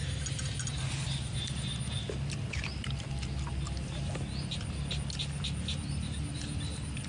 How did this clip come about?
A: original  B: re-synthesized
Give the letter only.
A